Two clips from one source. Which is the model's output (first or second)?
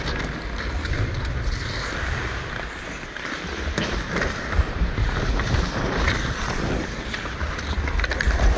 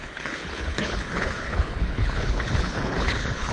second